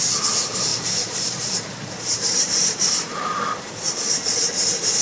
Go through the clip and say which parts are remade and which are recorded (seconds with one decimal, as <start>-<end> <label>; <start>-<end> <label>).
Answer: 0.0-0.7 recorded; 0.7-3.7 remade; 3.7-5.0 recorded